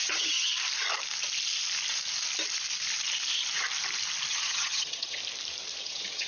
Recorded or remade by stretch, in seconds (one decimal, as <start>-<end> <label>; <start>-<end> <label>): 0.0-0.5 remade; 0.5-4.3 recorded; 4.3-5.2 remade; 5.2-5.8 recorded; 5.8-6.3 remade